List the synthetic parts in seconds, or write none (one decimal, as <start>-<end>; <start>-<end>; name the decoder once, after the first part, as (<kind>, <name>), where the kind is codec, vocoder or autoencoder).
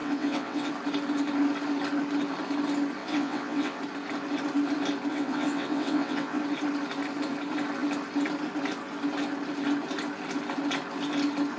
0.0-0.7 (vocoder, WaveNeXt); 3.0-3.8; 5.1-6.4